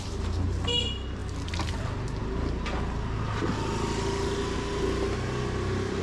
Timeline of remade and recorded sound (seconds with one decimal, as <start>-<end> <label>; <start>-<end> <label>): 0.0-6.0 recorded